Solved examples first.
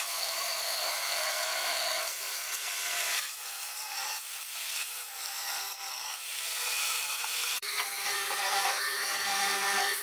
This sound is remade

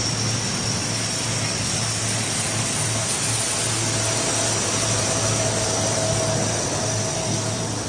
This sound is recorded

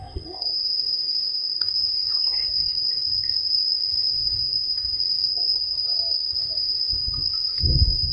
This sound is remade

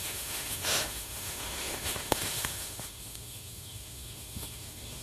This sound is remade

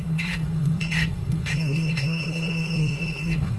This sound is remade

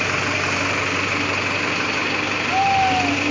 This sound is recorded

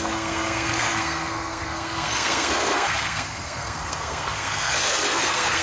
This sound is remade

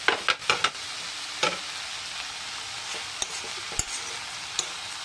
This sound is recorded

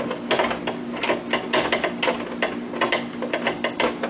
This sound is recorded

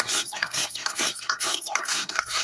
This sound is remade